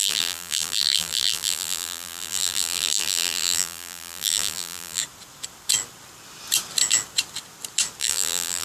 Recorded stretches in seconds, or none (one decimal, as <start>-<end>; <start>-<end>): 5.0-8.0